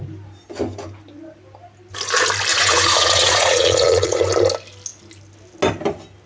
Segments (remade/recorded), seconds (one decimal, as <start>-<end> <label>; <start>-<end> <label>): 0.0-2.5 recorded; 2.5-4.2 remade; 4.2-6.3 recorded